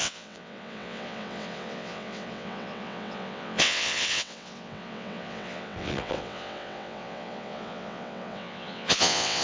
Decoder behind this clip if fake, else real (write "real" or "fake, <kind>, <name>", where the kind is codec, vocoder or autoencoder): fake, vocoder, WaveNeXt